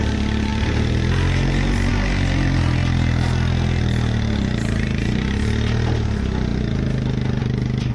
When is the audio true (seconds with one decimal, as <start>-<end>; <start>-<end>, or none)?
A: 0.0-7.9